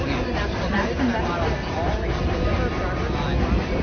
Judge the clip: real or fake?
real